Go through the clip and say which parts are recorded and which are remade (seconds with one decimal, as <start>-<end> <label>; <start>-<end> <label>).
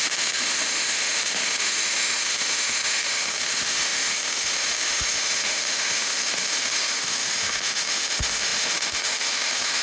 0.0-9.8 remade